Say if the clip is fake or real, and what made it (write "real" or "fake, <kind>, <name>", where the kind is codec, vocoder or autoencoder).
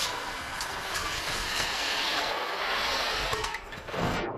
fake, codec, SNAC